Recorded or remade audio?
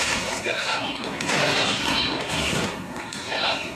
remade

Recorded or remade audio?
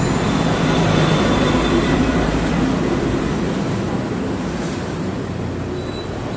remade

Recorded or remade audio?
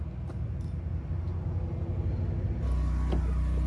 recorded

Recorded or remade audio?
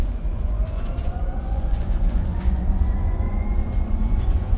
remade